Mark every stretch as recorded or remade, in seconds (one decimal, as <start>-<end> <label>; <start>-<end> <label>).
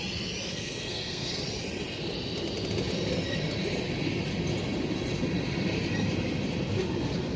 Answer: 0.0-0.5 recorded; 0.5-1.4 remade; 1.4-7.4 recorded